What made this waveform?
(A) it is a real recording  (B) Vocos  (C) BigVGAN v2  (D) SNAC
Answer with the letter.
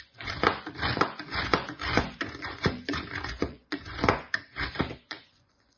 B